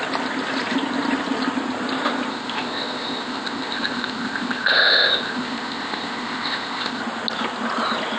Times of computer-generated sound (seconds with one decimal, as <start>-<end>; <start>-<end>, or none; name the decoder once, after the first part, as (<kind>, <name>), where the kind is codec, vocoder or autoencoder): 2.3-7.0 (codec, ZipCodec)